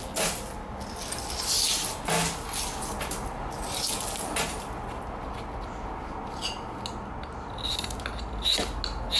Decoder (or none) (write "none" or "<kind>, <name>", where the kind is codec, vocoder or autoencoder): none